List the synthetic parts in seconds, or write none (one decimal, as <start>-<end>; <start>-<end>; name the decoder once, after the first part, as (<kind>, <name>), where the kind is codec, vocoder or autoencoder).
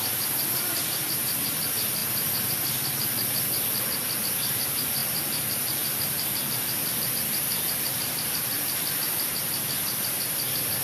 2.0-2.5 (vocoder, BigVGAN v2); 5.0-7.9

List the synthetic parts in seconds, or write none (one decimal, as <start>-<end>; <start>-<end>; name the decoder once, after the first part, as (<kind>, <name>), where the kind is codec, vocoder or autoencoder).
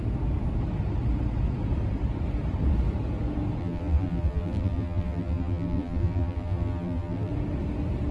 3.6-7.3 (vocoder, BigVGAN v2)